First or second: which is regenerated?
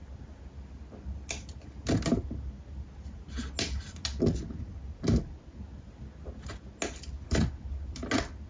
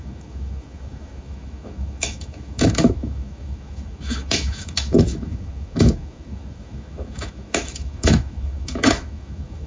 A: second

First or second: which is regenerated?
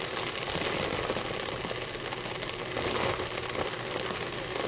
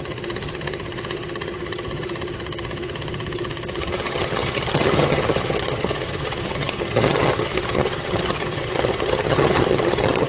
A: second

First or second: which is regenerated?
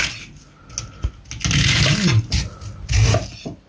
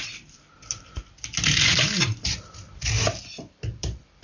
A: second